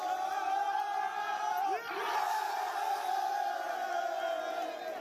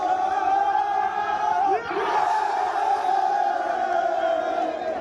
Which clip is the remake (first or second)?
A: second